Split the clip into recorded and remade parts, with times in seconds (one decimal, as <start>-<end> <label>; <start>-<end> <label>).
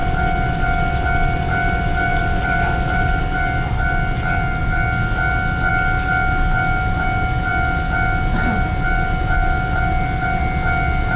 0.0-2.1 recorded; 2.1-3.2 remade; 3.2-11.2 recorded